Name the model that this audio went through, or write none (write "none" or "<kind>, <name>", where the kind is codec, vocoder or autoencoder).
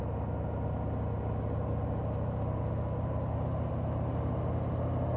none